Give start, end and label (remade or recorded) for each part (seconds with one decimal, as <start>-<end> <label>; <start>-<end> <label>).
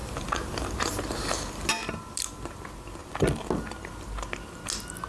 0.0-1.7 remade; 1.7-5.1 recorded